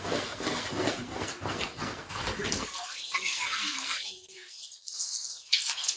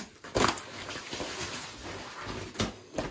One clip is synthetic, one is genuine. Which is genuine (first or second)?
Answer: second